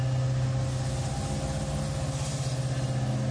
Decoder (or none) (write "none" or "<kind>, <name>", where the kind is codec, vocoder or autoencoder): none